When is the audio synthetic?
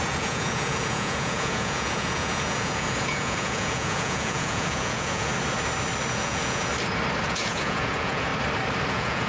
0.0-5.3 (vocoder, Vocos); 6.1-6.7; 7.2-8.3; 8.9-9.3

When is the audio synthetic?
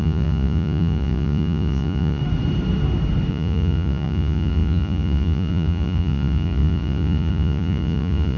0.0-2.2 (vocoder, Vocos); 3.3-8.4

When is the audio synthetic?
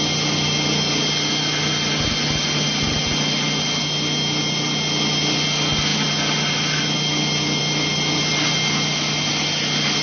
none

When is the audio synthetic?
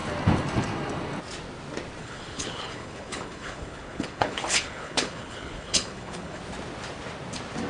2.0-6.4 (codec, HILCodec)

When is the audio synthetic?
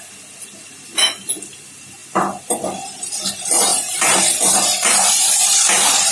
3.7-4.2 (vocoder, BigVGAN v2)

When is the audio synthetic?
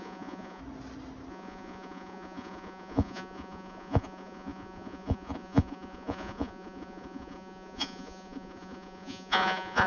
0.0-0.6 (vocoder, Vocos); 1.3-9.9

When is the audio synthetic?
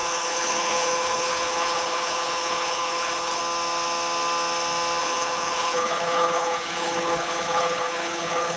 0.0-3.4 (codec, HILCodec); 5.0-8.6